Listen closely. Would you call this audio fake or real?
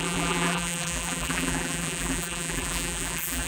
fake